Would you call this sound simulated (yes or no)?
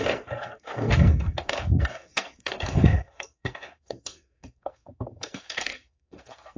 yes